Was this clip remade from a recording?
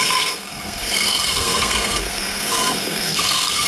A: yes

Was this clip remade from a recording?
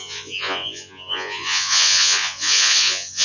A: yes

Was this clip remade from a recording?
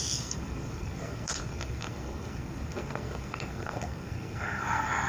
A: yes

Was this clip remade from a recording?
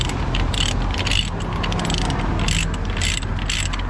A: no